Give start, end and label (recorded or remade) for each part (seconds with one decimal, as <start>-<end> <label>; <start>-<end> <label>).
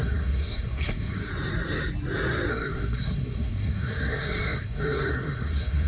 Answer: 0.0-1.3 remade; 1.3-2.5 recorded; 2.5-5.9 remade